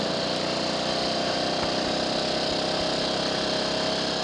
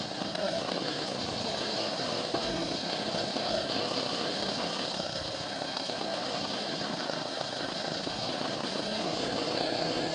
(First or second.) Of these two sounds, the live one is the first